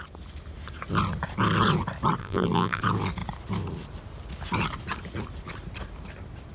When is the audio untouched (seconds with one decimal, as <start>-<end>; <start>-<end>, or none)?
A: 0.0-2.2; 2.8-6.5